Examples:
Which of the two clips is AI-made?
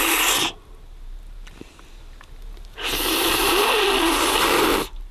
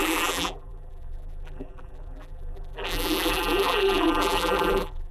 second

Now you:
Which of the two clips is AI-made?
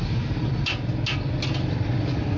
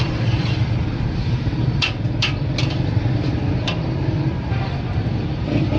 second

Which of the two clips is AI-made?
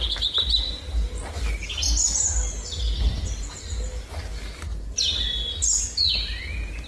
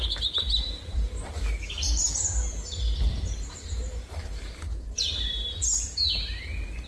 second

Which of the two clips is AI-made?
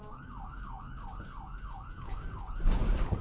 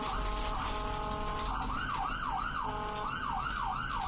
first